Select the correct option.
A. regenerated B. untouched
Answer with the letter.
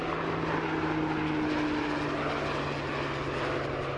B